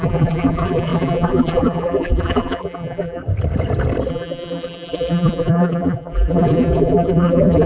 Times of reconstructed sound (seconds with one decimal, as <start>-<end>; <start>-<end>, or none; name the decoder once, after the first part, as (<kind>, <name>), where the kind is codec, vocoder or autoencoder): 0.0-3.2 (vocoder, BigVGAN v2); 4.1-7.7